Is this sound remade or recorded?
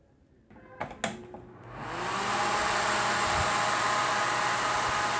recorded